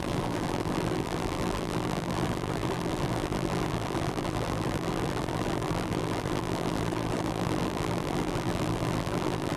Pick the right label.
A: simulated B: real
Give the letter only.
A